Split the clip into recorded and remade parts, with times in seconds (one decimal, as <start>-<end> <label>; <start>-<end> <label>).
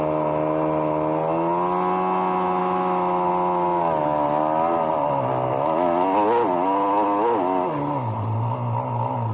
0.0-2.6 recorded; 2.6-3.3 remade; 3.3-9.3 recorded